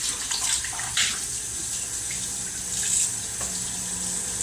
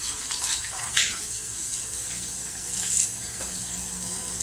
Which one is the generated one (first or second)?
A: second